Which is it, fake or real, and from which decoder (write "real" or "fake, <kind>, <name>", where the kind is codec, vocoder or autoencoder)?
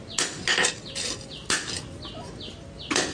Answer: real